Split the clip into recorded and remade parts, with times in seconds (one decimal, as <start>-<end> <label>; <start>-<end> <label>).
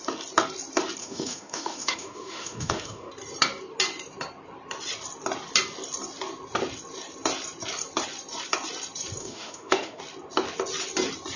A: 0.0-1.0 recorded; 1.0-3.1 remade; 3.1-9.2 recorded; 9.2-10.0 remade; 10.0-11.4 recorded